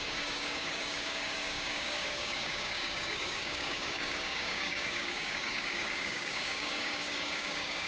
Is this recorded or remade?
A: remade